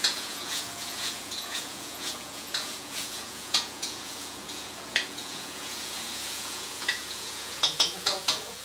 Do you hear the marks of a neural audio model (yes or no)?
yes